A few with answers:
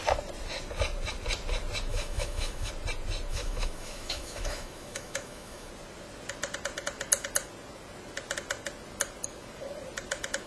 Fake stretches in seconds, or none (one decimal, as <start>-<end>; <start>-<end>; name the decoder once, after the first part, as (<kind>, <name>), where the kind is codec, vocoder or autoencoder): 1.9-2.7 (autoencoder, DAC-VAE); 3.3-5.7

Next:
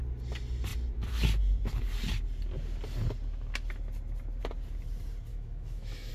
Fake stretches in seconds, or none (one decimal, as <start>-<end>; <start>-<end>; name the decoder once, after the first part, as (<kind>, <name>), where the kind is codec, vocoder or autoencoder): 5.3-6.1 (autoencoder, DAC-VAE)

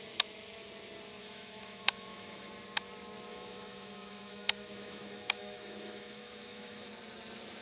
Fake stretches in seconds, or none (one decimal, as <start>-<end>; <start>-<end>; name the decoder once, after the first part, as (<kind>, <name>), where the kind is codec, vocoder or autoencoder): 1.2-2.5 (autoencoder, DAC-VAE); 3.3-6.9